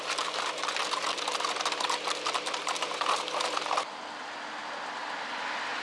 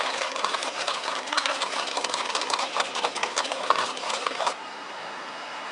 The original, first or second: first